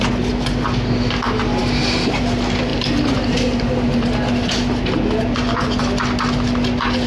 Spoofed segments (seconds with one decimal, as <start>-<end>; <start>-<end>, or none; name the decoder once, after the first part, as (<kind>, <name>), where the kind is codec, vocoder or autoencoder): none